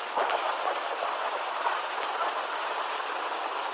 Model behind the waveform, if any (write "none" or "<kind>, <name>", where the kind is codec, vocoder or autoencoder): none